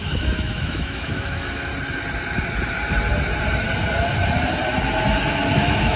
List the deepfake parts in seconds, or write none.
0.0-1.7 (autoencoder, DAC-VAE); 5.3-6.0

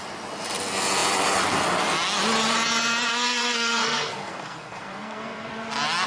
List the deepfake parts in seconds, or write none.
3.1-5.5 (codec, SNAC)

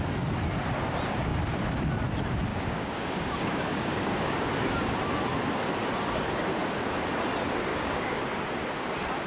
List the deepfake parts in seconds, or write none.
2.5-4.5 (codec, DAC); 7.7-8.2

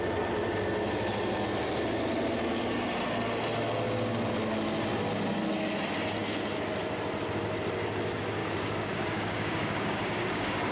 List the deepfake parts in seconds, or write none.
8.4-10.7 (codec, DAC)